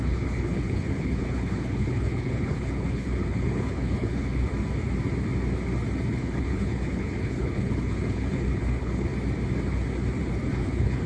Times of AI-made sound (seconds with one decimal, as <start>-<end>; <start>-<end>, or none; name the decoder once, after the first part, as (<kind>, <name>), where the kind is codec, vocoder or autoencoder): 0.0-4.5 (codec, HILCodec); 6.1-9.1; 10.5-11.1